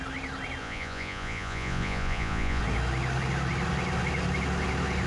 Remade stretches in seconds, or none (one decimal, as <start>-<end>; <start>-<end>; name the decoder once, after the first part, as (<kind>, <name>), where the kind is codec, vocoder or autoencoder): 0.6-2.6 (vocoder, Vocos)

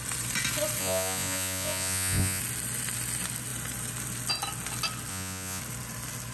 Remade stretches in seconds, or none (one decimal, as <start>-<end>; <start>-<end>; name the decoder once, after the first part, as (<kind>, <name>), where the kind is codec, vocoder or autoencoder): 0.8-2.4 (vocoder, Vocos); 5.1-5.6

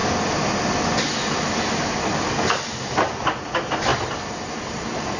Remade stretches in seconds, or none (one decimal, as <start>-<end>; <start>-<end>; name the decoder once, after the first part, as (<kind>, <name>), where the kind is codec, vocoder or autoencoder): none

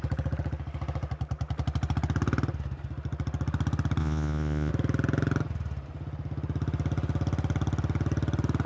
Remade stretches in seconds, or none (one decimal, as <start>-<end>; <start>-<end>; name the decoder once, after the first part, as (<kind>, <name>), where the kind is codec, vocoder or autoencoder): 4.0-4.7 (vocoder, Vocos)

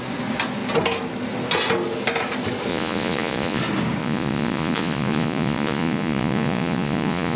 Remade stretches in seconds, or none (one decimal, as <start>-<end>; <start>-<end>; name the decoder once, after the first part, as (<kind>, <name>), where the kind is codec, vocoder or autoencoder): 2.7-3.6 (vocoder, Vocos); 4.0-7.4

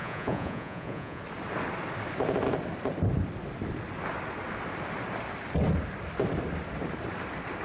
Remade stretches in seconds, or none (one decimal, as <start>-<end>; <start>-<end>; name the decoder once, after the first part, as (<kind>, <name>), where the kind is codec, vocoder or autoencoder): 0.0-1.2 (vocoder, Vocos)

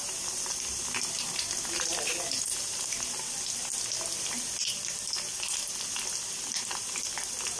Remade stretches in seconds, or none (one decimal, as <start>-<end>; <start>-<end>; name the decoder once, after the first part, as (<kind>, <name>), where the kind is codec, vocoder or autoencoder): none